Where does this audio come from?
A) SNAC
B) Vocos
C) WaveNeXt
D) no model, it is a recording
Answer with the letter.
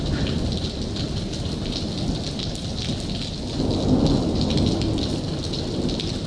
D